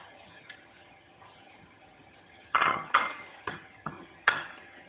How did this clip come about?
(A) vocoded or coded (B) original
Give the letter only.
A